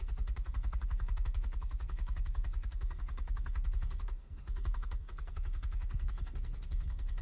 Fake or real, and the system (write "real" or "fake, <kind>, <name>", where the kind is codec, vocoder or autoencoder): fake, codec, SNAC